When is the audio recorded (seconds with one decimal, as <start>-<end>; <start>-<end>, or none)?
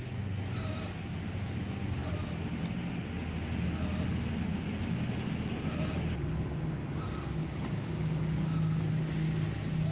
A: 0.0-7.9; 8.9-9.9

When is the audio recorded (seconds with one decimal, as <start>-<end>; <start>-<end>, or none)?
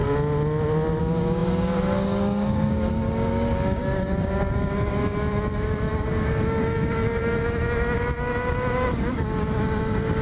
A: 0.0-1.0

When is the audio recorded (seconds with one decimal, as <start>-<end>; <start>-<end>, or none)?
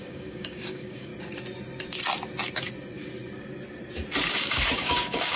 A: 1.1-4.3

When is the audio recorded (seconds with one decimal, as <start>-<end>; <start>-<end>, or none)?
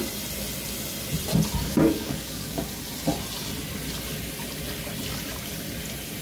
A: 0.0-1.6; 2.7-6.2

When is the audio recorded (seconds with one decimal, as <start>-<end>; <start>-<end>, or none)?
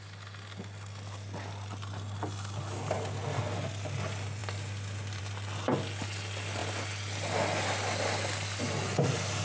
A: 0.0-9.4